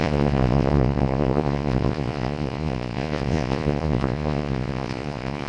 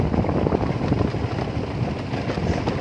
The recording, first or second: second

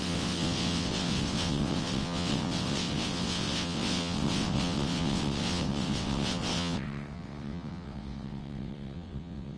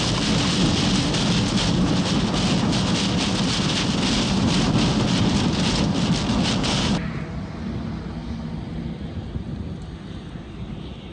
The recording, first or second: second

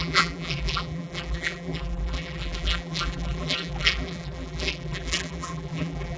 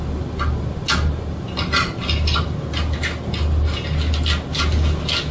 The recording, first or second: second